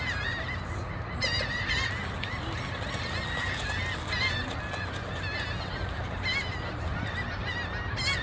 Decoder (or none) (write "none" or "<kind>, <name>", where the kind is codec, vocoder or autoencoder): none